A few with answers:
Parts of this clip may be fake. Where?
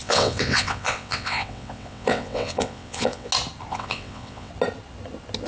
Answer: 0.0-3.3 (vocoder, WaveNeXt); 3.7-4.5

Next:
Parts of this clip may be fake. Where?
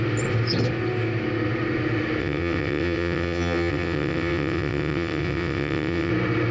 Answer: 2.2-6.1 (vocoder, WaveNeXt)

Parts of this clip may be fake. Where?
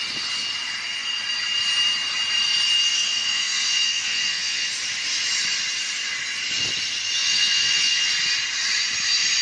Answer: 2.9-4.7 (vocoder, WaveNeXt); 7.2-8.1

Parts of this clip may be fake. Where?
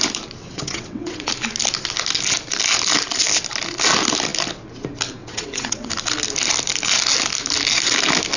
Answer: 0.4-1.3 (vocoder, WaveNeXt); 5.2-5.9